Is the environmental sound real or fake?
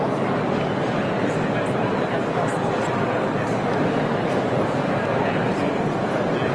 real